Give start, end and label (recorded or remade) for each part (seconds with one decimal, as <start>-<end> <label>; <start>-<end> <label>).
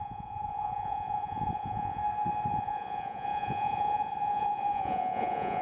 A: 0.0-2.0 remade; 2.0-2.5 recorded; 2.5-5.6 remade